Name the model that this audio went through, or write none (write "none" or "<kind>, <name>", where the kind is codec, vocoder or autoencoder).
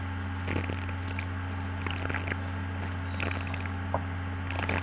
none